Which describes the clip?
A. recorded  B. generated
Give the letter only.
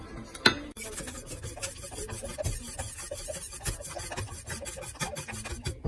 A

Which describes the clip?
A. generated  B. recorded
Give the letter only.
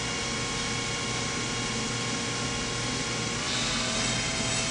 B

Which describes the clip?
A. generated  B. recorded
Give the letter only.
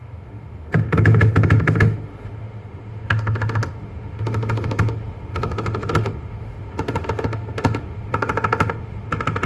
A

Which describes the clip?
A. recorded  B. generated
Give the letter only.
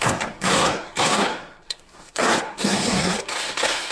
B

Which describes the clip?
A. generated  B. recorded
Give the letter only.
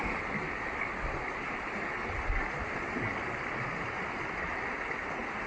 B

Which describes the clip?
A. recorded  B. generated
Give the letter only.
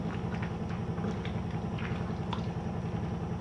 A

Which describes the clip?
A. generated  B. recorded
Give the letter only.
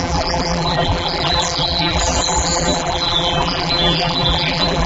A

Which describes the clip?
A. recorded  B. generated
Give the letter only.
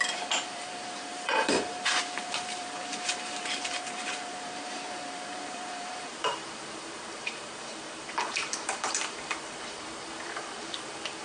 B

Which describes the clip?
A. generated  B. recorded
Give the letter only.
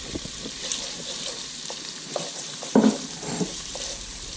A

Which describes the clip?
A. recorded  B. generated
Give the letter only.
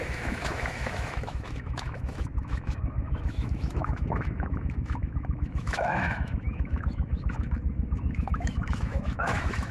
B